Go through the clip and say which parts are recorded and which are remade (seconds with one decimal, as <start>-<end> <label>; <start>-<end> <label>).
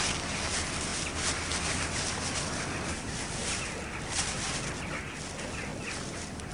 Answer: 0.0-6.5 recorded